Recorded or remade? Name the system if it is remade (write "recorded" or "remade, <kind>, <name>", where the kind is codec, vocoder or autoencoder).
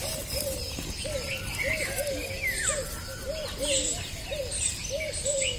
recorded